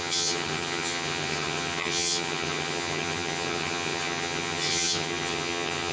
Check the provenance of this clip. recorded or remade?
remade